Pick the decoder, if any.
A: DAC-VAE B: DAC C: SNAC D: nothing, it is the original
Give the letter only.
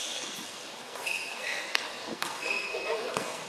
C